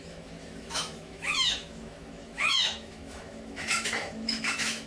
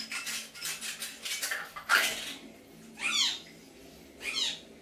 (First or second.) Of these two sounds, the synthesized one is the first